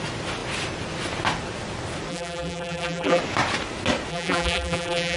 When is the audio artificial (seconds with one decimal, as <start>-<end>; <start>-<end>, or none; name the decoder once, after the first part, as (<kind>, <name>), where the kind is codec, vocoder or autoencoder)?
2.1-3.2 (vocoder, BigVGAN v2); 4.1-5.2